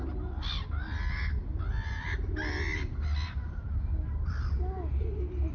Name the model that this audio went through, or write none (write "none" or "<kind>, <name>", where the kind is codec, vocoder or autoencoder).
none